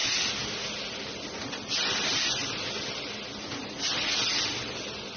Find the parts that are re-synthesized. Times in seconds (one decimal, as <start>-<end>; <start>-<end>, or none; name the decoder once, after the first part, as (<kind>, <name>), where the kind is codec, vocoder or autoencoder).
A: none